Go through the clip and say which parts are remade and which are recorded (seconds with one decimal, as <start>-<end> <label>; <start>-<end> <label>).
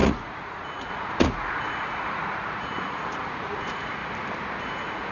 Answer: 0.0-4.0 remade; 4.0-4.6 recorded; 4.6-5.1 remade